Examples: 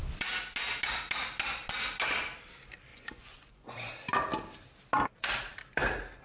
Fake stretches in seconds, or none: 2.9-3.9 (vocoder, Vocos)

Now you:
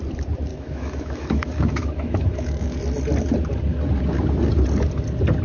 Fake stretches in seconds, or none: 0.5-2.8 (autoencoder, DAC-VAE)

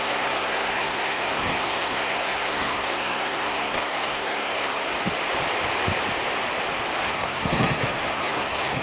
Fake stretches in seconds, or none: 0.0-4.7 (codec, SNAC); 7.0-8.8

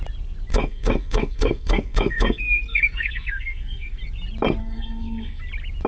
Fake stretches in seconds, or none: 0.5-4.0 (codec, SNAC); 4.6-5.4

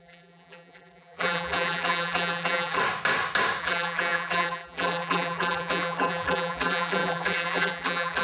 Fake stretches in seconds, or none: 0.0-2.8 (vocoder, BigVGAN v2); 3.6-8.2